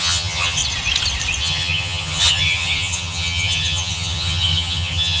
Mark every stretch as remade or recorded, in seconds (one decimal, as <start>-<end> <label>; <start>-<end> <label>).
0.0-0.6 remade; 0.6-1.4 recorded; 1.4-5.2 remade